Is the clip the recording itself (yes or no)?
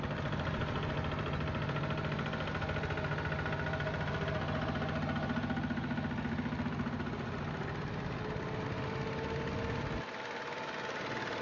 yes